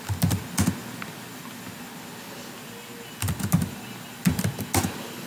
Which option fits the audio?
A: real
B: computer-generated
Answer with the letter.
A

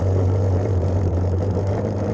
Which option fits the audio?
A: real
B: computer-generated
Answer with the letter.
B